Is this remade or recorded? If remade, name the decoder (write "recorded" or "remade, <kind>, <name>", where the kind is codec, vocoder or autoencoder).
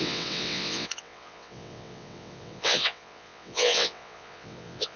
remade, vocoder, WaveNeXt